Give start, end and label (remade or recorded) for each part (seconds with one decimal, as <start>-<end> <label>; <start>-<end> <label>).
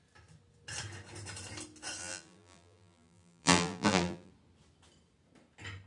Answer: 0.0-2.0 recorded; 2.0-4.3 remade; 4.3-5.9 recorded